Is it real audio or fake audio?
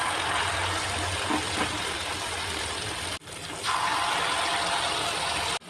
real